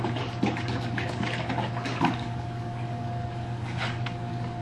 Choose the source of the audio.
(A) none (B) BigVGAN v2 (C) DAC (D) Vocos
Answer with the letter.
C